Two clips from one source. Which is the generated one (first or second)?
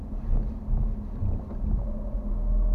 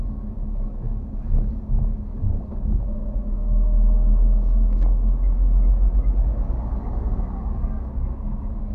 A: second